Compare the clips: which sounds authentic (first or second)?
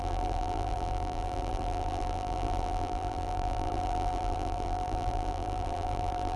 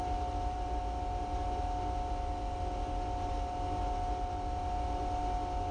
second